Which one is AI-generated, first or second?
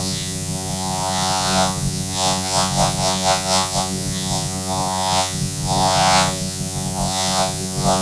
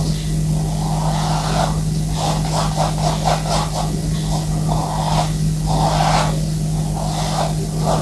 first